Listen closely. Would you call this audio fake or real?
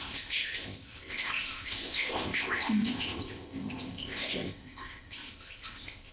fake